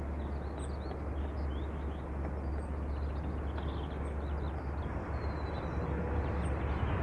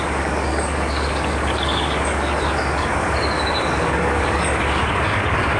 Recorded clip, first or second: first